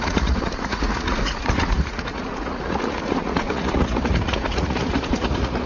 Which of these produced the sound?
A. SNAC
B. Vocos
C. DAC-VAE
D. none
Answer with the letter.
B